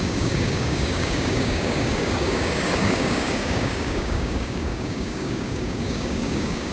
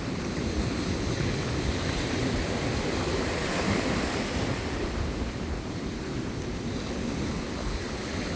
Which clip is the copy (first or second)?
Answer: first